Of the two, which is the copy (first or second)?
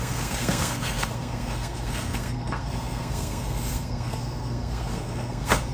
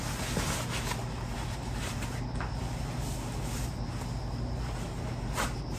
first